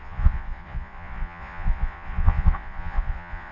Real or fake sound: fake